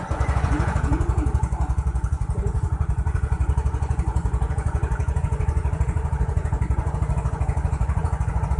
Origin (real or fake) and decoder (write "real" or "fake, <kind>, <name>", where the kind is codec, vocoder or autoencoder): fake, vocoder, Vocos